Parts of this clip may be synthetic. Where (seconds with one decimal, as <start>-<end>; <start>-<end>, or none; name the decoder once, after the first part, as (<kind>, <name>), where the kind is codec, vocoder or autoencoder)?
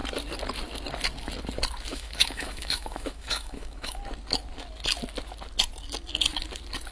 1.9-4.0 (autoencoder, DAC-VAE)